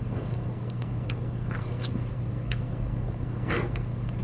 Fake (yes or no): yes